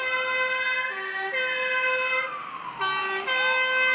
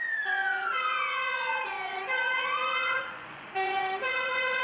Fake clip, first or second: second